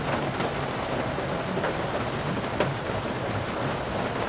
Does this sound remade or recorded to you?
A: recorded